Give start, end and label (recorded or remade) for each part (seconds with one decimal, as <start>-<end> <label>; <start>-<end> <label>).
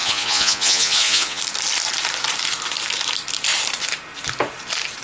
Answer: 0.0-1.4 remade; 1.4-5.0 recorded